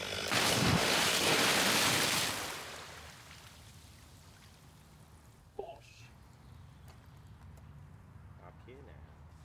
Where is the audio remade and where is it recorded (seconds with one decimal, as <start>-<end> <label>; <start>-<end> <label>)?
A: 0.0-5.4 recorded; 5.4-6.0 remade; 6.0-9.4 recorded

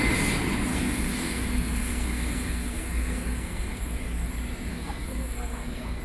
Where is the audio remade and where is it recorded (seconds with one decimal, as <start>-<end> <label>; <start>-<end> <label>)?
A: 0.0-0.7 recorded; 0.7-4.3 remade; 4.3-4.7 recorded; 4.7-6.0 remade

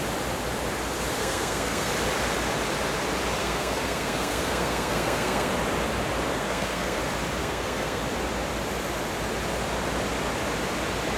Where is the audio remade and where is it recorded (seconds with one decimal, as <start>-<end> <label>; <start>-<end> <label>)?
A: 0.0-1.2 recorded; 1.2-1.9 remade; 1.9-3.4 recorded; 3.4-5.5 remade; 5.5-6.3 recorded; 6.3-7.0 remade; 7.0-7.4 recorded; 7.4-8.0 remade; 8.0-11.2 recorded

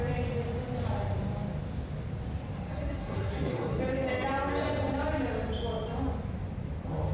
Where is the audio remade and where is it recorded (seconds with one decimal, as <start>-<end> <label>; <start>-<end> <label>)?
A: 0.0-2.7 recorded; 2.7-3.8 remade; 3.8-7.1 recorded

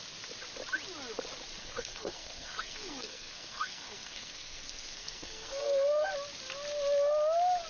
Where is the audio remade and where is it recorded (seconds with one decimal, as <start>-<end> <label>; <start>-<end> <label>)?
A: 0.0-1.6 recorded; 1.6-6.1 remade; 6.1-7.7 recorded